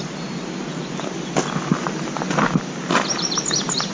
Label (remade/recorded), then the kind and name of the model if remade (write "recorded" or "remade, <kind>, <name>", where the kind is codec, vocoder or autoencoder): recorded